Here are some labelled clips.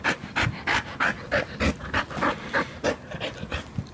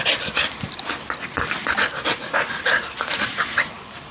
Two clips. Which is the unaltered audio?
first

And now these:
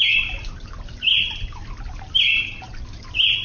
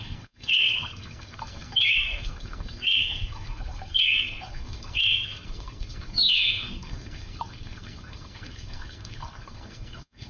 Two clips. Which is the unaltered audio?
first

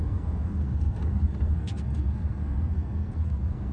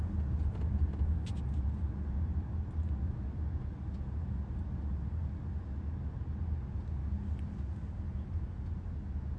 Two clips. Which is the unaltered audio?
second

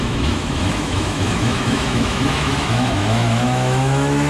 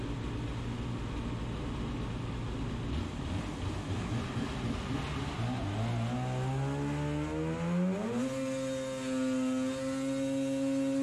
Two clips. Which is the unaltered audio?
second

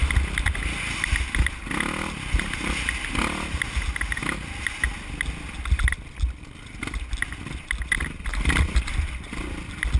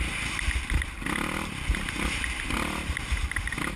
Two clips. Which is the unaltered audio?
first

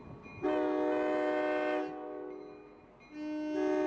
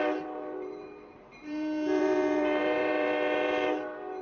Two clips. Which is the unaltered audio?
first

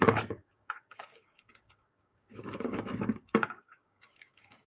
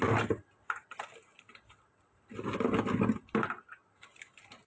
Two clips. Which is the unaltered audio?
second